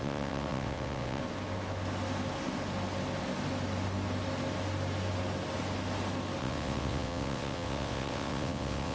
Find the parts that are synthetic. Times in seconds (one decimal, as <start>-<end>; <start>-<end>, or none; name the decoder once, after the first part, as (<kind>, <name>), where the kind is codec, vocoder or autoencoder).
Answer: 0.0-1.2 (vocoder, WaveNeXt); 6.4-8.9